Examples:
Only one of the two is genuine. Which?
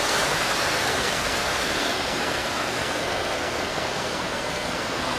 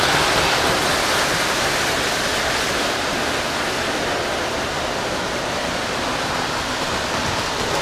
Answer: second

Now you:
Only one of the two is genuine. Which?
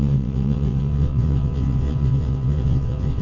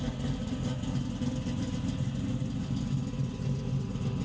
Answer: second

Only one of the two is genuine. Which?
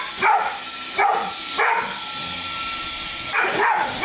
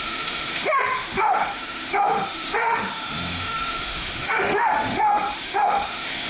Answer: first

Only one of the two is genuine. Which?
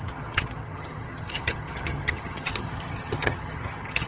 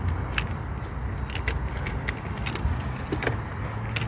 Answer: second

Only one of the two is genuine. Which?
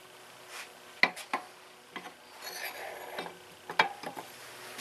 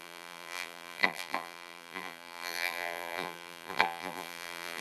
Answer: first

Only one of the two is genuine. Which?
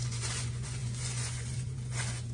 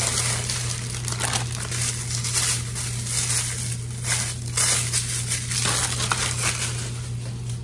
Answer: second